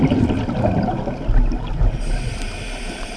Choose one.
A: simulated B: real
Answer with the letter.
B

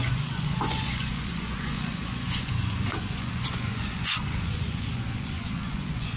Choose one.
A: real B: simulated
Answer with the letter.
B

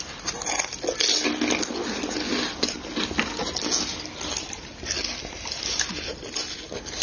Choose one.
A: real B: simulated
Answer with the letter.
A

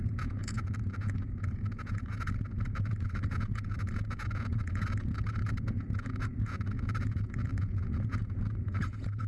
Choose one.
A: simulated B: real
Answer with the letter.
A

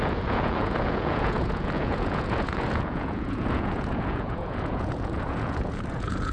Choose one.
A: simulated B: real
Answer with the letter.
A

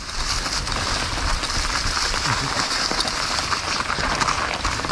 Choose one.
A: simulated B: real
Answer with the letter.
B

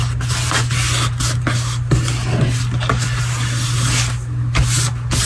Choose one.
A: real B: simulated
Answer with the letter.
A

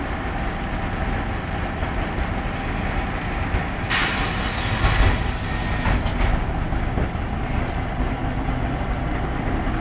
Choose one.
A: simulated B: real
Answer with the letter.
B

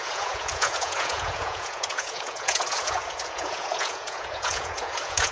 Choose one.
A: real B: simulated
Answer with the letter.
B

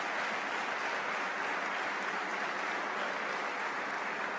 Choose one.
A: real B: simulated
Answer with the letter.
A